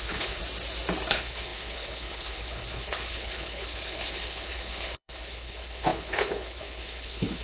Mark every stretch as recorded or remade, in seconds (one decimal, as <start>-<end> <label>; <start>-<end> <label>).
0.0-0.4 remade; 0.4-1.1 recorded; 1.1-7.4 remade